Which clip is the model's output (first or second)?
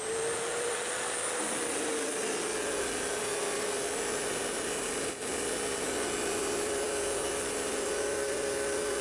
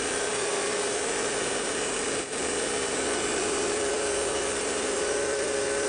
second